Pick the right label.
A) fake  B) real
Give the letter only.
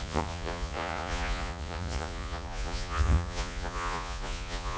A